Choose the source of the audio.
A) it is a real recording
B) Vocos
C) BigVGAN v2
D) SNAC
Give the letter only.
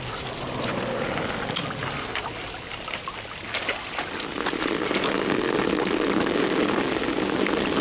A